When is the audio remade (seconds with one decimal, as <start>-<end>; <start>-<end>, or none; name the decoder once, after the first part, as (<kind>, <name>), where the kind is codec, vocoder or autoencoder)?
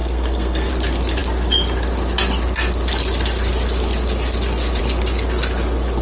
0.0-0.7 (codec, SNAC)